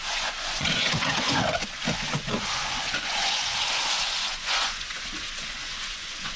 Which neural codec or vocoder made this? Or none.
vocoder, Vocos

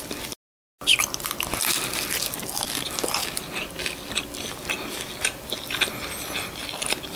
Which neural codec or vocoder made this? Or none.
none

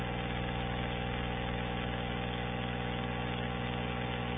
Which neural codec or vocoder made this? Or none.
none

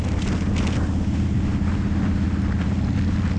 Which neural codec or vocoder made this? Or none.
none